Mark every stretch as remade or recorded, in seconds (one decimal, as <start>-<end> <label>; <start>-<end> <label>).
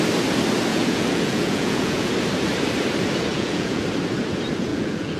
0.0-0.7 recorded; 0.7-2.1 remade; 2.1-3.3 recorded; 3.3-3.8 remade; 3.8-4.7 recorded; 4.7-5.2 remade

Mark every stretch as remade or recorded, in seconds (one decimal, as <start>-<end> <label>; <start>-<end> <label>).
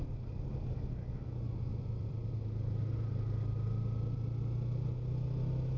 0.0-1.7 recorded; 1.7-2.3 remade; 2.3-5.8 recorded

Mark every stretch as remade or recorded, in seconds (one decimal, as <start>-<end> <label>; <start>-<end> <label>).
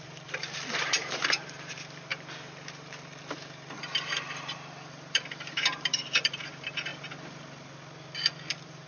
0.0-6.9 remade; 6.9-8.5 recorded; 8.5-8.9 remade